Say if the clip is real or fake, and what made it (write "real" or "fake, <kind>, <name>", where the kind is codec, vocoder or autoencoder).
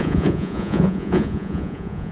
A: fake, vocoder, Vocos